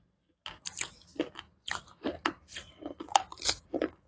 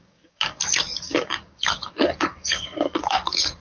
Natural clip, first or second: first